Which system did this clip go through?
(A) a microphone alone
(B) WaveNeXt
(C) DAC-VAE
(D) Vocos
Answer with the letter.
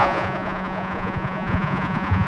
D